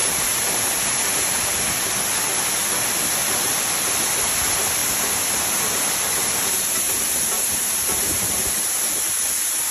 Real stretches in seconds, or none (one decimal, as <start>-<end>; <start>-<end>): 1.6-4.8; 8.7-9.7